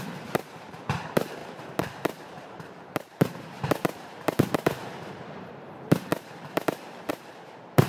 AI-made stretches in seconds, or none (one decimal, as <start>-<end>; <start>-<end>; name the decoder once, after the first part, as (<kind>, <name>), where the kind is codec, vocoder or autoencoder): 0.0-1.4 (vocoder, BigVGAN v2); 2.4-7.9